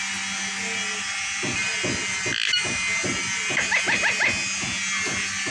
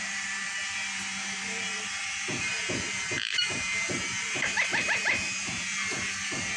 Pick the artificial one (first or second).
second